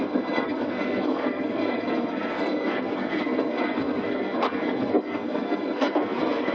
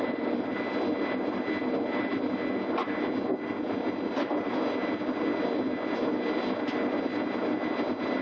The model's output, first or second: first